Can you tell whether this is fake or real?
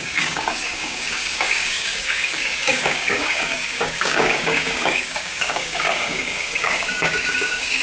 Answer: fake